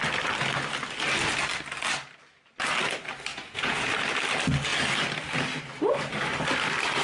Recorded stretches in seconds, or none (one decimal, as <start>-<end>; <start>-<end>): 0.0-3.3; 3.9-7.0